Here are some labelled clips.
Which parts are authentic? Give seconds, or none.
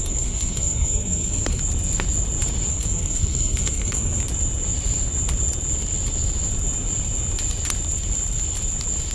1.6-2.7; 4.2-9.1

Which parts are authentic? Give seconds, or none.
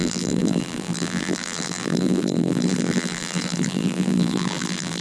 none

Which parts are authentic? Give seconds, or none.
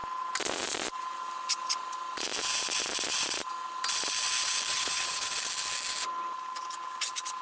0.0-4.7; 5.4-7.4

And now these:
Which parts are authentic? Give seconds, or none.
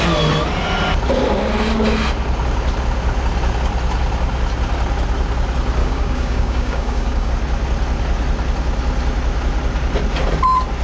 0.0-5.8; 7.3-10.8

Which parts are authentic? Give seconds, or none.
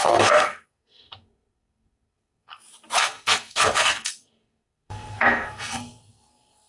2.6-3.0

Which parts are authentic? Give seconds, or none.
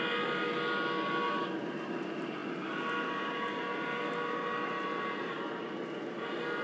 0.0-6.6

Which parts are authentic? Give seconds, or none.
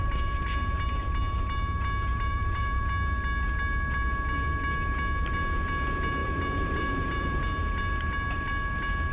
0.0-2.1; 2.8-6.2; 7.4-9.1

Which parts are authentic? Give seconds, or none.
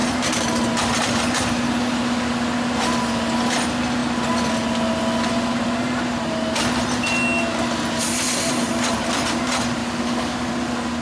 0.0-9.8; 10.5-11.0